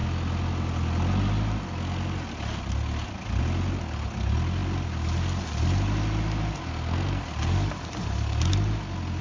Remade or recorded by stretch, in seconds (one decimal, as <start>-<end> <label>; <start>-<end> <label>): 0.0-6.7 recorded; 6.7-7.2 remade; 7.2-9.2 recorded